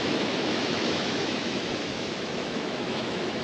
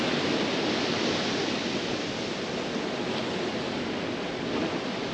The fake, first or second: first